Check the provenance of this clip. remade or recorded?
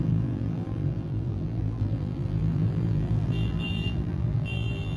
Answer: remade